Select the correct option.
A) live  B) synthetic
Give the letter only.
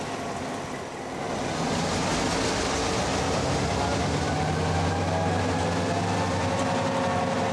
A